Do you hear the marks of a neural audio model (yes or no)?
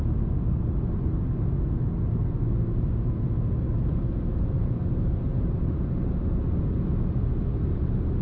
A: no